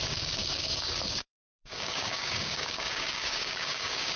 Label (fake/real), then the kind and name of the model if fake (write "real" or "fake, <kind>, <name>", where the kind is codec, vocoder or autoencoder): fake, codec, DAC